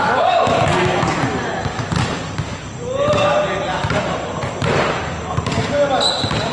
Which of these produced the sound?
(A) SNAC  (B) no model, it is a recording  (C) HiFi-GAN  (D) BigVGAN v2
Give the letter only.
B